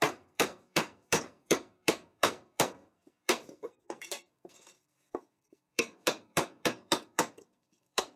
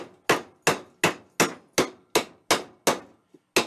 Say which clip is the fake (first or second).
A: first